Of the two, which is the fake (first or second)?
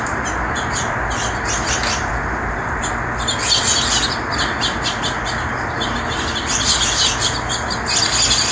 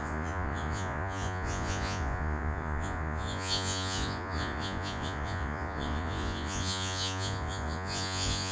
second